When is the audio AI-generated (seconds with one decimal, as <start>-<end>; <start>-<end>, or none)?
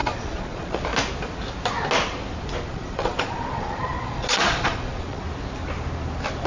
0.0-0.8; 2.7-5.2